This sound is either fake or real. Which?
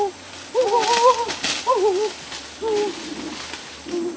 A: real